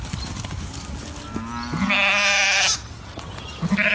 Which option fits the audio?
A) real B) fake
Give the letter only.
A